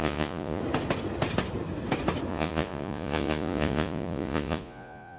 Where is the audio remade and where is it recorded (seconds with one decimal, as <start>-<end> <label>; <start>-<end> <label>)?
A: 0.0-0.6 remade; 0.6-2.3 recorded; 2.3-5.2 remade